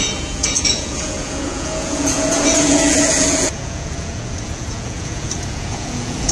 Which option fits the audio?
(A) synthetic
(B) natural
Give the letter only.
A